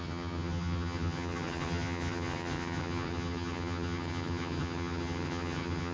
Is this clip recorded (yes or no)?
no